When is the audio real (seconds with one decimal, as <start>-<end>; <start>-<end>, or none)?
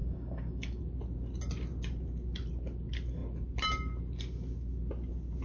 0.8-5.4